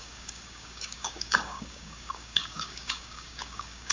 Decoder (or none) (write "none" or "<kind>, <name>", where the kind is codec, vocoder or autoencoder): codec, DAC